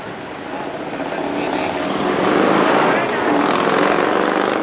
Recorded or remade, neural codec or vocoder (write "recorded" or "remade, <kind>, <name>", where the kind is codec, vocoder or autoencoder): recorded